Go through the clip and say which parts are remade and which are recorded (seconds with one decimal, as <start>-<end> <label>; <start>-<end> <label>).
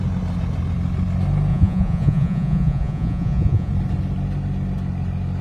0.0-1.5 recorded; 1.5-3.7 remade; 3.7-5.4 recorded